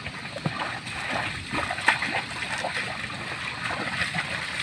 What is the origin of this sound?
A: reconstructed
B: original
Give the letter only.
B